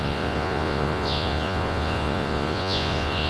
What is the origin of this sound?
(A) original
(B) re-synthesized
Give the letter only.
B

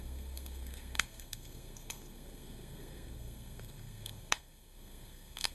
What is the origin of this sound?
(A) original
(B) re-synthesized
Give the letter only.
B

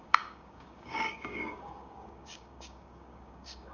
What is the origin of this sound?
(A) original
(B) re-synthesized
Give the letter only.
B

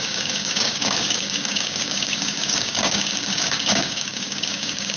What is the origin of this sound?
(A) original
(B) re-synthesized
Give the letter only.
B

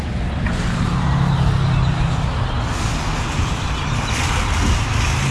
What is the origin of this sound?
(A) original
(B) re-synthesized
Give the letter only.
A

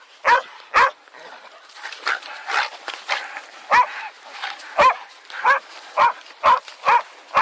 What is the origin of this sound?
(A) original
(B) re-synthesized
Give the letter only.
A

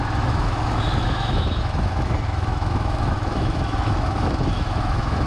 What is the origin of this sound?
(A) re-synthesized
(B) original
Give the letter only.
A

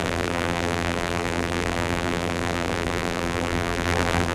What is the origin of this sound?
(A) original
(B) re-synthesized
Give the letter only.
B